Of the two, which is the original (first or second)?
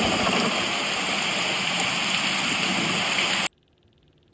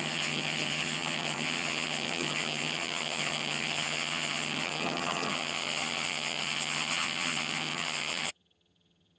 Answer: first